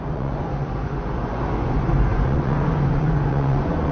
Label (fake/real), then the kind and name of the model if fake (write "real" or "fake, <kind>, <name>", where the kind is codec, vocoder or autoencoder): fake, vocoder, Vocos